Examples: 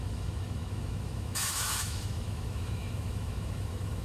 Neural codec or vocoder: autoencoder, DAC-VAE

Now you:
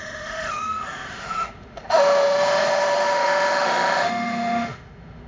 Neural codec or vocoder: autoencoder, DAC-VAE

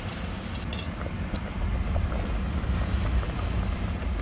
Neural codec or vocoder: none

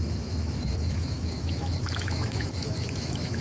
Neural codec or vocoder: autoencoder, DAC-VAE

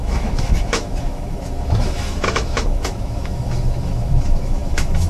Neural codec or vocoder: autoencoder, DAC-VAE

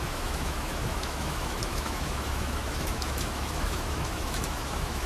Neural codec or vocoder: autoencoder, DAC-VAE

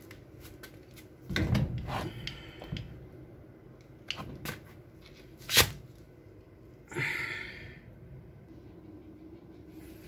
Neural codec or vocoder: none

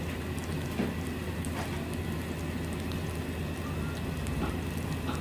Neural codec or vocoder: none